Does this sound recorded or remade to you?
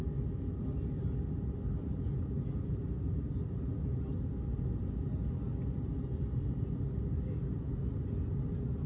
recorded